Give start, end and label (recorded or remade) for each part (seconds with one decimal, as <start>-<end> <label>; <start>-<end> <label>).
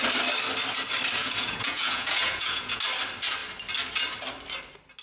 0.0-1.2 recorded; 1.2-2.8 remade; 2.8-5.0 recorded